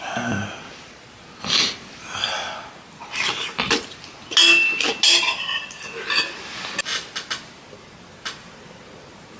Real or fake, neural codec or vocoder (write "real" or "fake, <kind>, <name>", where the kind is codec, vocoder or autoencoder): real